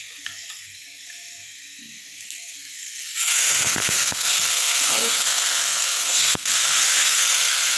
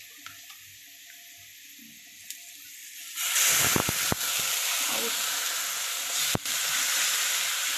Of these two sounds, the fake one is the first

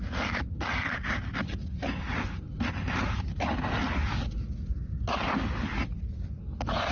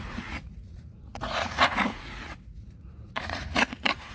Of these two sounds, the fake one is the second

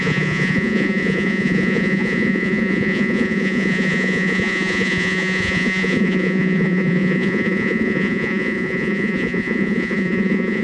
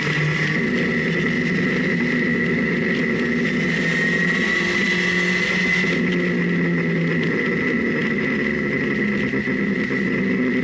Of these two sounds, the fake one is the first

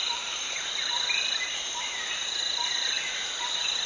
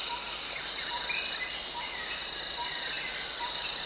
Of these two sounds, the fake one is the first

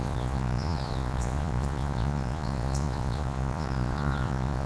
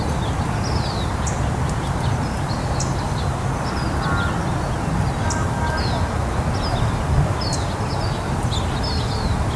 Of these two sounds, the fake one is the first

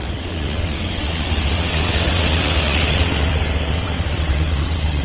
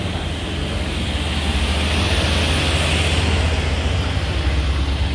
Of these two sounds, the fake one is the first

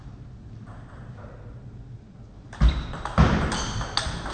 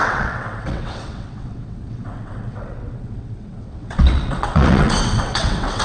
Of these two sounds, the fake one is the second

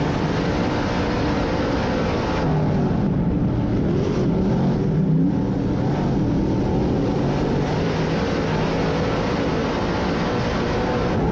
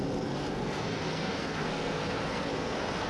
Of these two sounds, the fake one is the second